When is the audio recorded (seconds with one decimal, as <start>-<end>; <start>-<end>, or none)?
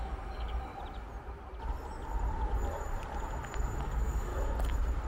0.7-3.8; 4.3-5.1